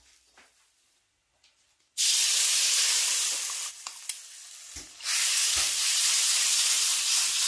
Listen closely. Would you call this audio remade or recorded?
recorded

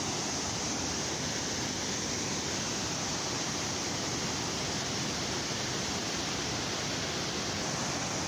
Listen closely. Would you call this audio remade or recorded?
recorded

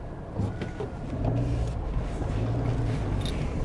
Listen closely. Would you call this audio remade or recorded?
recorded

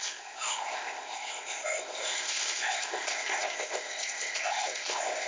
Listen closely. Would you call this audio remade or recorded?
remade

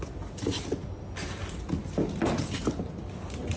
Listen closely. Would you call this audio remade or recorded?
recorded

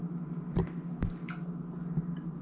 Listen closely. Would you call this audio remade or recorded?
recorded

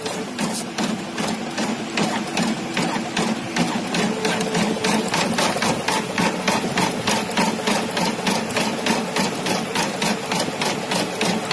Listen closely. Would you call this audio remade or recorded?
recorded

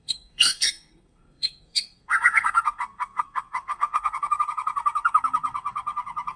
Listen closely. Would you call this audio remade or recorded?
remade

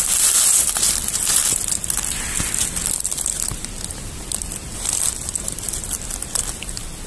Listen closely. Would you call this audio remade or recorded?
recorded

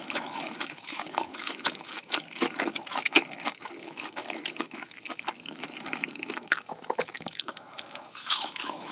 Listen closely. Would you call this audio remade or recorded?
remade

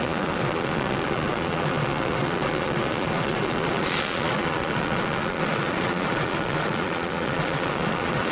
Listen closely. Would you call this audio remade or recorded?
remade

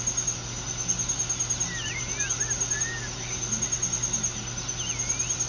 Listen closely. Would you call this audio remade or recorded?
recorded